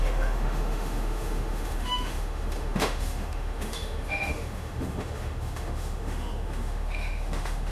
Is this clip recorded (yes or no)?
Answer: no